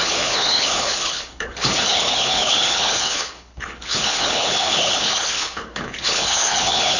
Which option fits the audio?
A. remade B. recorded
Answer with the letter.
A